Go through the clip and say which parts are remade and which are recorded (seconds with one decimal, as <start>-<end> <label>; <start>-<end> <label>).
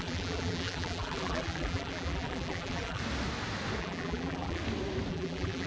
0.0-3.0 remade; 3.0-3.8 recorded; 3.8-4.6 remade; 4.6-5.1 recorded; 5.1-5.7 remade